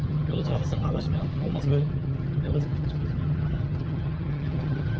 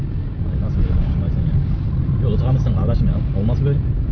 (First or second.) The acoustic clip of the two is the second